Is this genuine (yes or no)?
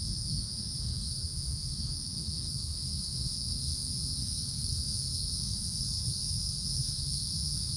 no